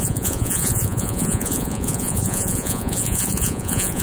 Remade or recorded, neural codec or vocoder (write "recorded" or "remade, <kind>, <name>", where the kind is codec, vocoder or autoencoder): remade, vocoder, Vocos